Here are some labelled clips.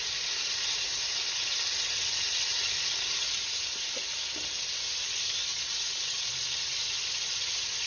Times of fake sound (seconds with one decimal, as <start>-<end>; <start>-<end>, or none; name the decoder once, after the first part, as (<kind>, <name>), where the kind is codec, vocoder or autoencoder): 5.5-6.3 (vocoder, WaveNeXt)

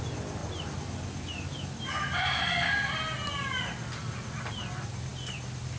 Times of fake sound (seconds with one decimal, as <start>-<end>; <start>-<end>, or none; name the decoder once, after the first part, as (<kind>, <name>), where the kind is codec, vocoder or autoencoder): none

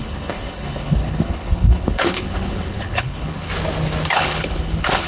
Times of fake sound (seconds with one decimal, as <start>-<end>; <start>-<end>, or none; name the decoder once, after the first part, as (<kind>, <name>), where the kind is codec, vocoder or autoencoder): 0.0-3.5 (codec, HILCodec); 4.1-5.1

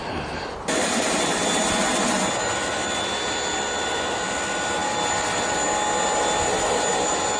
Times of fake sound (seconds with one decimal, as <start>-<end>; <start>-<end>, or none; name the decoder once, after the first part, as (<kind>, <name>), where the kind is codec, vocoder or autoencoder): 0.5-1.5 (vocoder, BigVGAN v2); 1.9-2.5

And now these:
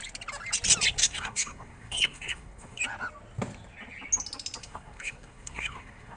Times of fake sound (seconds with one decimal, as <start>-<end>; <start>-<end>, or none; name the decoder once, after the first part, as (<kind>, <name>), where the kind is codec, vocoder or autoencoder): 1.0-2.8 (codec, SNAC); 4.6-6.2